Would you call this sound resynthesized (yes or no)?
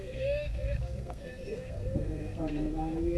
yes